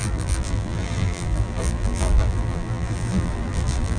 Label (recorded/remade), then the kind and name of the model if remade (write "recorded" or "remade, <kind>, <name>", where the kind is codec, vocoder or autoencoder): remade, vocoder, BigVGAN v2